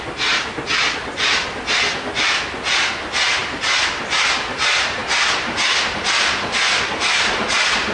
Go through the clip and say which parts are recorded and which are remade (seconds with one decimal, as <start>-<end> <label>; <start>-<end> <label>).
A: 0.0-7.9 recorded

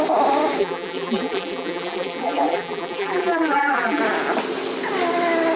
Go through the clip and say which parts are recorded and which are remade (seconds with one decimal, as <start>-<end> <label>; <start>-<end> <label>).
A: 0.0-0.6 recorded; 0.6-4.0 remade; 4.0-5.6 recorded